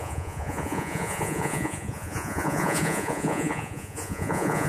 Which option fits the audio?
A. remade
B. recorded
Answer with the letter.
A